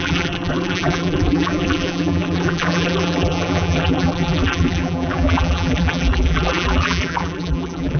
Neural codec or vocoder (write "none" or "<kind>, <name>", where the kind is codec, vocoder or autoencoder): vocoder, BigVGAN v2